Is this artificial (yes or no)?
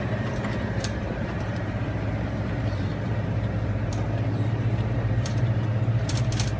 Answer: yes